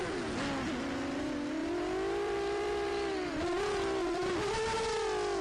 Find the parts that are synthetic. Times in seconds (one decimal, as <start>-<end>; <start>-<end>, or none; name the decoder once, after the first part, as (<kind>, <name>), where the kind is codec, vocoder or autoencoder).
1.6-2.9 (vocoder, BigVGAN v2); 3.3-4.3